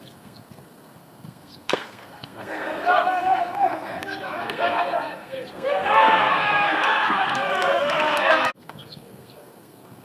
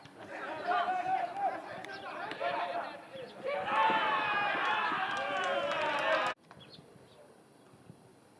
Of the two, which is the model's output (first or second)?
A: first